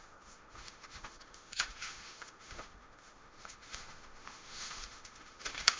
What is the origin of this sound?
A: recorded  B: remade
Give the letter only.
B